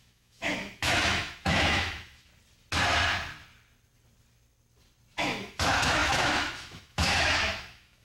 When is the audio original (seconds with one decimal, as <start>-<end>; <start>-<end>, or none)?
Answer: 2.3-5.2